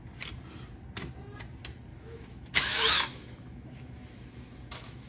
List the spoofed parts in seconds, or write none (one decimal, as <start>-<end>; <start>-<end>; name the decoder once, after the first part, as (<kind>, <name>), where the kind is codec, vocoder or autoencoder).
1.9-5.1 (autoencoder, DAC-VAE)